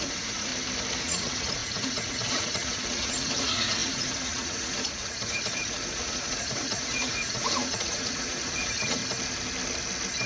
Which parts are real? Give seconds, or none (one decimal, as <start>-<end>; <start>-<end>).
0.5-1.0; 9.0-10.3